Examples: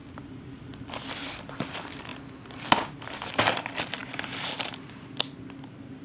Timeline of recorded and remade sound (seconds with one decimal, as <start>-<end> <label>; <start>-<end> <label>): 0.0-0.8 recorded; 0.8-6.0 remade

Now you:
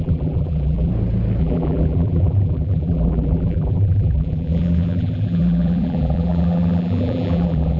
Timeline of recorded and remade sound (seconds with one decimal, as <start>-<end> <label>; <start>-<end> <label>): 0.0-0.9 remade; 0.9-1.4 recorded; 1.4-7.8 remade

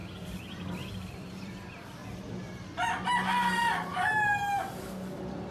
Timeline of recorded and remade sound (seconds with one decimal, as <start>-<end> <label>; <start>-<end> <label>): 0.0-2.0 remade; 2.0-5.5 recorded

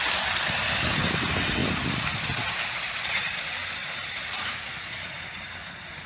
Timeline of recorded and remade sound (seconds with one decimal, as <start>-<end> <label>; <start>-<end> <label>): 0.0-1.6 recorded; 1.6-3.4 remade; 3.4-3.8 recorded; 3.8-4.9 remade; 4.9-6.1 recorded

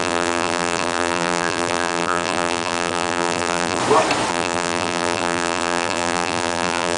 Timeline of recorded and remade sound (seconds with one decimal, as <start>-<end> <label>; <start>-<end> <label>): 0.0-3.8 remade; 3.8-4.3 recorded; 4.3-7.0 remade

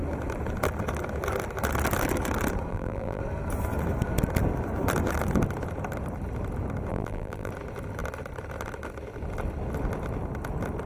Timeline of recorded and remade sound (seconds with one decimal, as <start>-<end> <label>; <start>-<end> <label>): 0.0-2.7 recorded; 2.7-3.2 remade; 3.2-6.9 recorded; 6.9-7.5 remade; 7.5-10.9 recorded